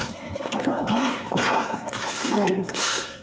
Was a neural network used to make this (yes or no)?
yes